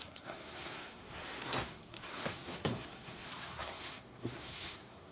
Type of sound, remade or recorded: remade